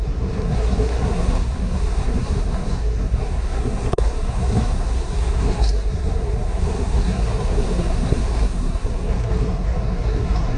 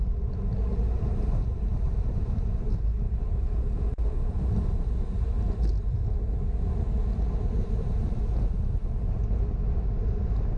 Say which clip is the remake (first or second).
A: first